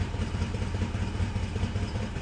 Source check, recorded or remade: remade